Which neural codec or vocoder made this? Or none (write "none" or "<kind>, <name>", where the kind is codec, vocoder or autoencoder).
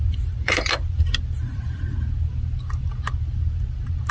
vocoder, BigVGAN v2